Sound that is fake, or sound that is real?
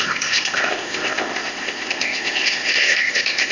fake